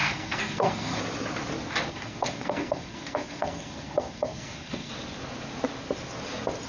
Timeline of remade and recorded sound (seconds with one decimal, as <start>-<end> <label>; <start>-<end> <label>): 0.0-1.0 remade; 1.0-1.9 recorded; 1.9-4.9 remade; 4.9-6.7 recorded